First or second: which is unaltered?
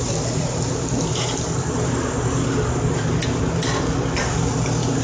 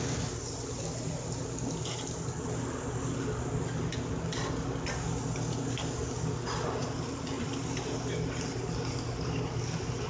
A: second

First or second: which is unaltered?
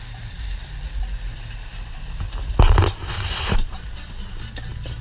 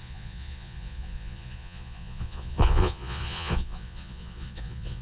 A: first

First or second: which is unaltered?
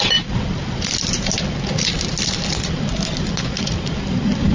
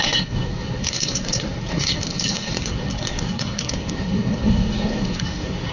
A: first